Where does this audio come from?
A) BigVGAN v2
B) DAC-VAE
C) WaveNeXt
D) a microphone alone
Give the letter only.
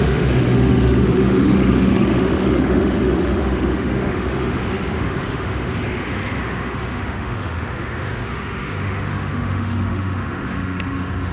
B